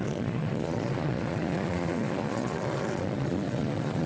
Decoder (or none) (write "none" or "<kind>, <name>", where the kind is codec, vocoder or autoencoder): vocoder, Vocos